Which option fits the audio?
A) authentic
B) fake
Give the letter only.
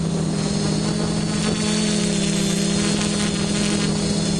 A